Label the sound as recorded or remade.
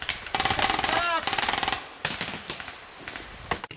recorded